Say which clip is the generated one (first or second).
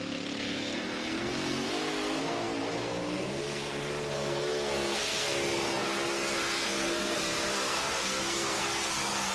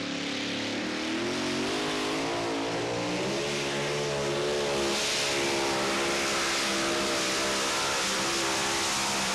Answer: first